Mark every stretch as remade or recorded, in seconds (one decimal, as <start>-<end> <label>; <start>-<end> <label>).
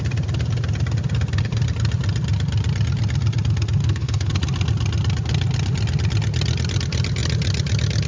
0.0-3.8 recorded; 3.8-4.3 remade; 4.3-8.1 recorded